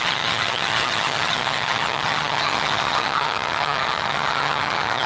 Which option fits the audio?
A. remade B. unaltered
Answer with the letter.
A